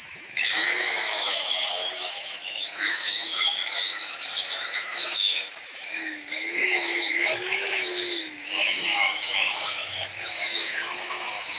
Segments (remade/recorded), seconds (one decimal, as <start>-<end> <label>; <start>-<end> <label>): 0.0-11.6 remade